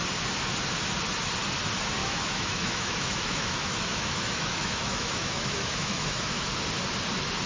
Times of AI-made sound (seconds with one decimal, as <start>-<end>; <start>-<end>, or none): 2.0-6.5